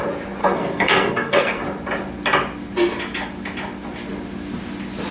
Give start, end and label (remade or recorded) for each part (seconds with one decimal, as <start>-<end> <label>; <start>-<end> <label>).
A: 0.0-0.4 recorded; 0.4-1.6 remade; 1.6-5.1 recorded